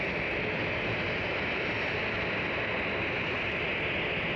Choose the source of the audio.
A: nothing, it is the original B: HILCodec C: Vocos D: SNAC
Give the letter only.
A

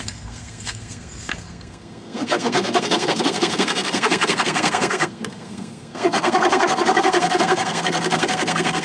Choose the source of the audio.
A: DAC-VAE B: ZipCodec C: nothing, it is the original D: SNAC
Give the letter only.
D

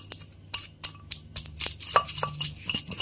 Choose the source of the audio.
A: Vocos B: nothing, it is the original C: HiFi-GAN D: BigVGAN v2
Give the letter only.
B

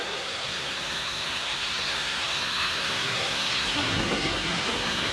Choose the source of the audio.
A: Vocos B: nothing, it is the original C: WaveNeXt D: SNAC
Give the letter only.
D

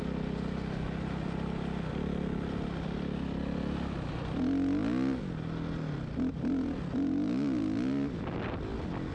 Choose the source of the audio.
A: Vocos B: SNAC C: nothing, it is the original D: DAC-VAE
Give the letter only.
C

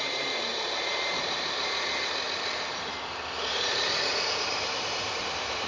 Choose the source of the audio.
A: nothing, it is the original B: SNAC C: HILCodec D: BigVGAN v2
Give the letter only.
D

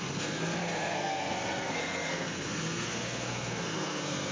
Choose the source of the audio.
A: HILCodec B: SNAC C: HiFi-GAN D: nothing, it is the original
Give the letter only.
B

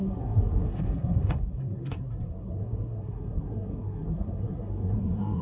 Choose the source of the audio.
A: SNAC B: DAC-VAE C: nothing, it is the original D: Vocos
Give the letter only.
A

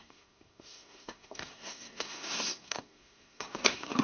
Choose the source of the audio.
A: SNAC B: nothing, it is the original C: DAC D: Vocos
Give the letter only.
A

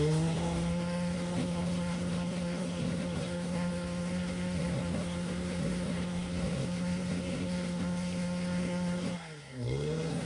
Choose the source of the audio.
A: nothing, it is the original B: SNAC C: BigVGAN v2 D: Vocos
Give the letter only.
B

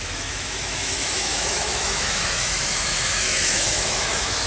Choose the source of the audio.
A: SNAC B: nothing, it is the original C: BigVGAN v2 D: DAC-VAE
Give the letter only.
D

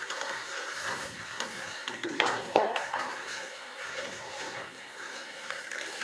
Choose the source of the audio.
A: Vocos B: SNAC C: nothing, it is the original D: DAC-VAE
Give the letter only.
B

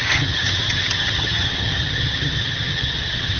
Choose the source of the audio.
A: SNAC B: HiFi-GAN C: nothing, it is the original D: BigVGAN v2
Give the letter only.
B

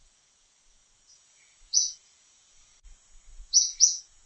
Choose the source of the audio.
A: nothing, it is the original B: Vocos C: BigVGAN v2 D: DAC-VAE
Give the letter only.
B